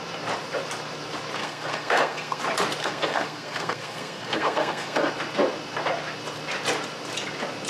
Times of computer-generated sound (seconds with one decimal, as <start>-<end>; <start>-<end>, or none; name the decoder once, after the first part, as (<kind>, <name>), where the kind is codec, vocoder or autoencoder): 1.4-2.4 (codec, SNAC); 2.8-5.1

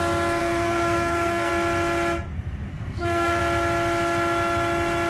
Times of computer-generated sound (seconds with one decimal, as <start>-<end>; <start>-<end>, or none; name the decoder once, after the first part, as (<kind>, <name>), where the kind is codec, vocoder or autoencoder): 0.4-1.5 (codec, SNAC); 2.7-3.4

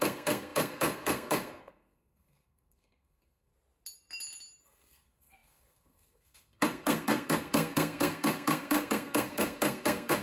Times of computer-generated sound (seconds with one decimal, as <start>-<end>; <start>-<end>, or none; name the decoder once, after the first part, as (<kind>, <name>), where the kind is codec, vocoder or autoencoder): 0.0-3.5 (codec, SNAC); 4.6-10.2

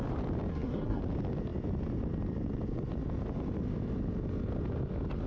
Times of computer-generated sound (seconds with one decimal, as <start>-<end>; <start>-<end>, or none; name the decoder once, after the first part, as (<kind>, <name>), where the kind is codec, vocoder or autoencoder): 0.5-1.0 (codec, SNAC)